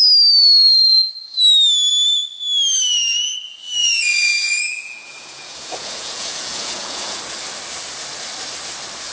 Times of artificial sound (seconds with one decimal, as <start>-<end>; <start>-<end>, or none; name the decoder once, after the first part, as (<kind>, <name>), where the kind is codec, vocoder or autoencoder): 3.8-7.2 (vocoder, Vocos)